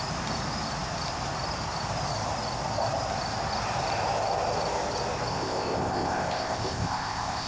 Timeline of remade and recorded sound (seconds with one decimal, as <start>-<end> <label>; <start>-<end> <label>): 0.0-5.3 recorded; 5.3-7.5 remade